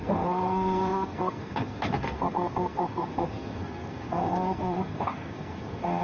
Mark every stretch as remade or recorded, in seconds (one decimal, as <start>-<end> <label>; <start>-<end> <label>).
0.0-6.0 remade